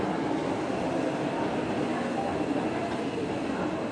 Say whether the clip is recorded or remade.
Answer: recorded